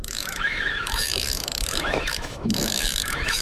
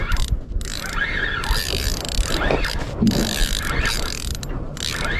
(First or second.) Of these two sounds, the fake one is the first